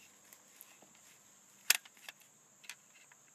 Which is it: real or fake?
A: real